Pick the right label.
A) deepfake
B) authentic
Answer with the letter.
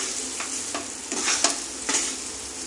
B